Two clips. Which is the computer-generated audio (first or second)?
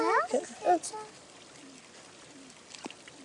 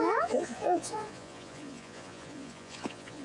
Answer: second